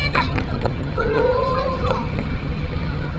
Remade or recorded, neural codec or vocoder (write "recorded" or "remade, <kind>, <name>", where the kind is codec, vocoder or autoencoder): remade, vocoder, HiFi-GAN